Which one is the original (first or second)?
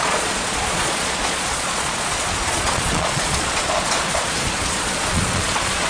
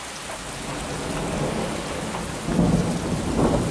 second